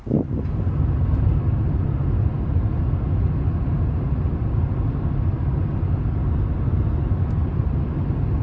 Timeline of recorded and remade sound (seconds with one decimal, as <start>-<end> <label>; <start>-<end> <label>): 0.0-8.4 recorded